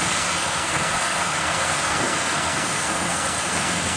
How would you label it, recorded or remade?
remade